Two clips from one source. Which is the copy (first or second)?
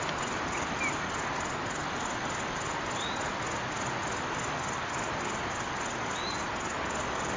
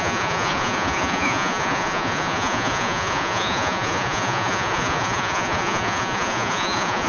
second